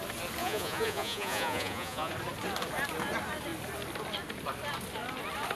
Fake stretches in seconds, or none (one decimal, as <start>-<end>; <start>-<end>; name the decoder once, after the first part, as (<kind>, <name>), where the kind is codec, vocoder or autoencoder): 0.4-2.1 (vocoder, Vocos)